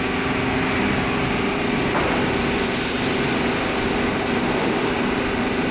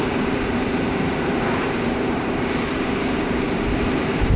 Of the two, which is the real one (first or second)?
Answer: first